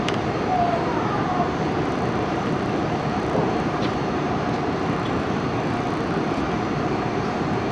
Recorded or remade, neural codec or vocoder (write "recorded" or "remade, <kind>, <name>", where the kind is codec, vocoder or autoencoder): remade, vocoder, BigVGAN v2